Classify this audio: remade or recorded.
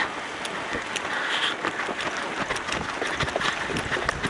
recorded